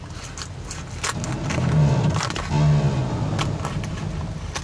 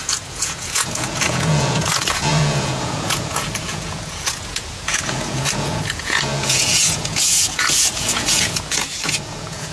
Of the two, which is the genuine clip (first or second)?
first